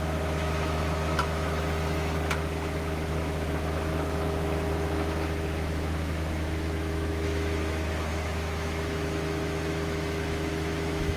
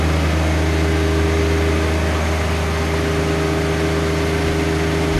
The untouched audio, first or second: second